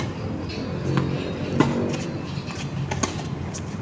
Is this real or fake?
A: real